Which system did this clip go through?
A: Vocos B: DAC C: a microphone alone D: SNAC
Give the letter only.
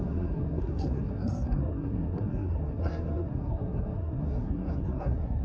D